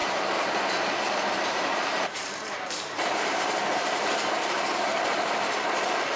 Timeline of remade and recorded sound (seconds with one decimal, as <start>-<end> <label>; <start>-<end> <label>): 0.0-6.2 remade